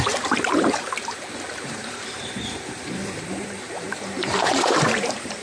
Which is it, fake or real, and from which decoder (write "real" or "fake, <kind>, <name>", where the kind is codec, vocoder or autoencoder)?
fake, vocoder, BigVGAN v2